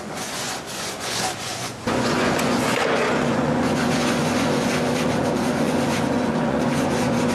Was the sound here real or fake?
fake